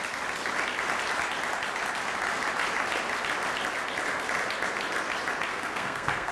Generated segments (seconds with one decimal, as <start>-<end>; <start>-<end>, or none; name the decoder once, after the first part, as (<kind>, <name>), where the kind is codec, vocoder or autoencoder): 5.5-6.3 (codec, SNAC)